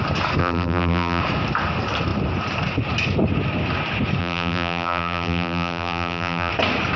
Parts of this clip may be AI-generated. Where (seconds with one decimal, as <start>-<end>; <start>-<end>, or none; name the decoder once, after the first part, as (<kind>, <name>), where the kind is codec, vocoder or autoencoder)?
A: 0.4-1.2 (vocoder, BigVGAN v2); 4.2-6.5